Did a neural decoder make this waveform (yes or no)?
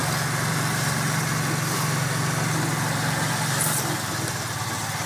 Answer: no